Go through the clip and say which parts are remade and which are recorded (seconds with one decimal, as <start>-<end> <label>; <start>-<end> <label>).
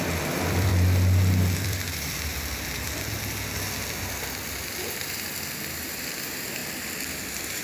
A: 0.0-0.7 remade; 0.7-1.5 recorded; 1.5-2.3 remade; 2.3-3.9 recorded; 3.9-7.6 remade